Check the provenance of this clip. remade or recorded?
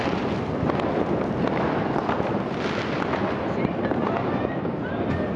recorded